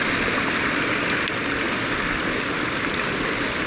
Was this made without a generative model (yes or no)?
yes